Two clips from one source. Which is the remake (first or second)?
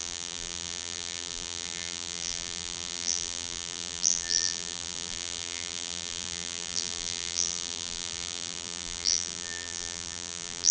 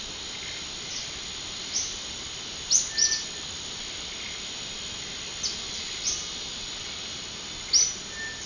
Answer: first